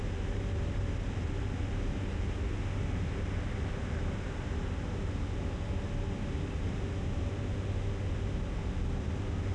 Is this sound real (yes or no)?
yes